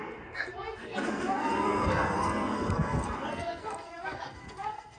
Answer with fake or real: fake